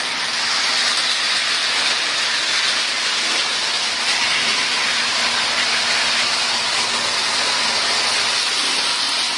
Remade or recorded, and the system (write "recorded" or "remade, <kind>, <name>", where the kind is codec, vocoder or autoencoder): recorded